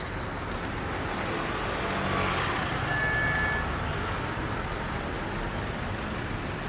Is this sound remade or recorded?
recorded